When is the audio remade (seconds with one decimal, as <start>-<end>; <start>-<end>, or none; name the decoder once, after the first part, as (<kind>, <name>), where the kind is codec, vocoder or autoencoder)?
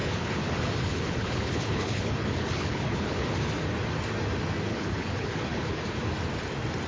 0.0-3.3 (codec, HILCodec); 4.7-5.8